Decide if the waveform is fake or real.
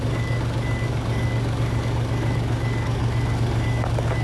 fake